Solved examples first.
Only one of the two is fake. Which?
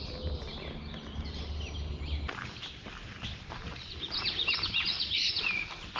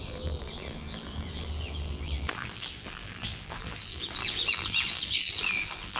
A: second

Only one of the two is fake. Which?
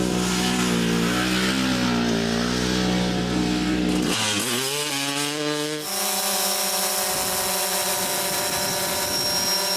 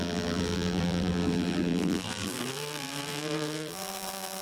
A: second